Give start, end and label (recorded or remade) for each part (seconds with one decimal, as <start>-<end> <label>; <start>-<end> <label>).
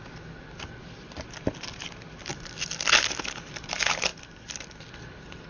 0.0-5.5 recorded